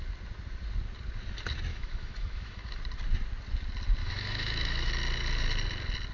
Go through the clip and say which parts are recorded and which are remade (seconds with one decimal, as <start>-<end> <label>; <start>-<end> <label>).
0.0-1.7 recorded; 1.7-2.8 remade; 2.8-4.0 recorded; 4.0-4.9 remade; 4.9-6.1 recorded